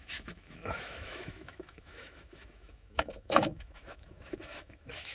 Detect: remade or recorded remade